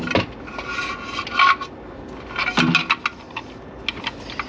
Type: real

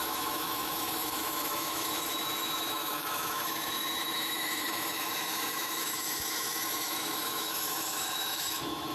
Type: fake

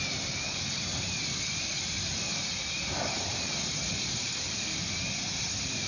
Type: real